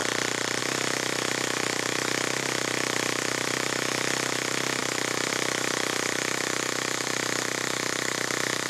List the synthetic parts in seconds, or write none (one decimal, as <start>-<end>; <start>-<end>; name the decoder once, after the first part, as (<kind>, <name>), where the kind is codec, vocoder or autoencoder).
0.6-8.7 (autoencoder, DAC-VAE)